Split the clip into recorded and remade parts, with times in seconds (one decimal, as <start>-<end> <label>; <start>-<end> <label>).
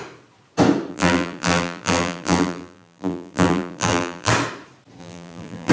0.0-0.9 recorded; 0.9-4.3 remade; 4.3-5.0 recorded; 5.0-5.7 remade